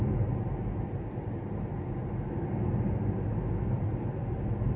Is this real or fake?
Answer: real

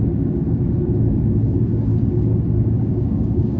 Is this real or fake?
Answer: fake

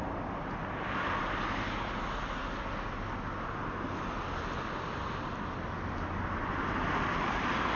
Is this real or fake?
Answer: real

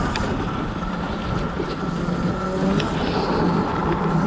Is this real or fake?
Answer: real